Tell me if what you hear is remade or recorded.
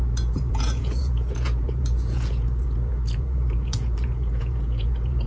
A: remade